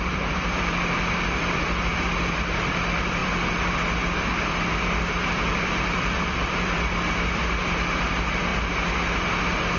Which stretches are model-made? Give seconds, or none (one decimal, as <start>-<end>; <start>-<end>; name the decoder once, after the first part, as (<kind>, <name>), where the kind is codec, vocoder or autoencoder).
0.0-8.5 (vocoder, BigVGAN v2); 9.4-9.8